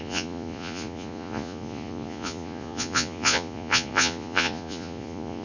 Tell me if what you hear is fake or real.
fake